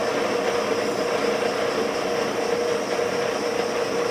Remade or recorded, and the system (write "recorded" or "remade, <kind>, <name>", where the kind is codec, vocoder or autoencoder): recorded